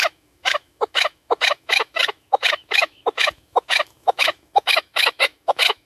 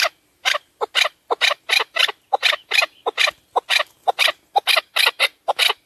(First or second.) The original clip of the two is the second